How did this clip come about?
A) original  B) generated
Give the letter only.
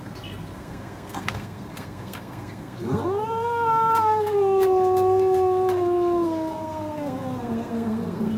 B